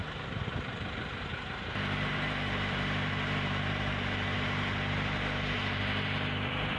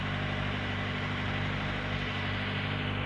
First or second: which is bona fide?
second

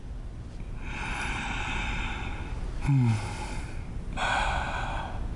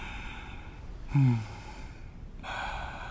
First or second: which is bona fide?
first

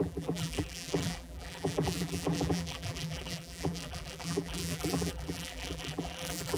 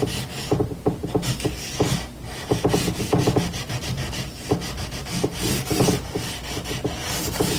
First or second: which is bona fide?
second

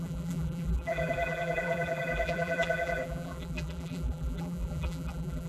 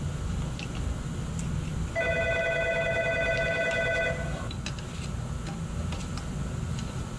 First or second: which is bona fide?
second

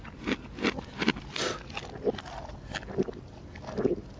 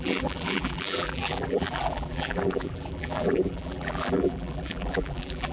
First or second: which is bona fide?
first